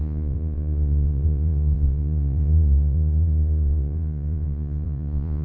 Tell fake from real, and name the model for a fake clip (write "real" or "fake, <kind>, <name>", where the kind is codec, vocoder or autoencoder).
fake, vocoder, Vocos